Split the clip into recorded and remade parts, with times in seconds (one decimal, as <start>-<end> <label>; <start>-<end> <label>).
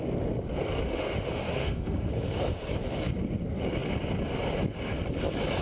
0.0-0.9 recorded; 0.9-2.1 remade; 2.1-5.6 recorded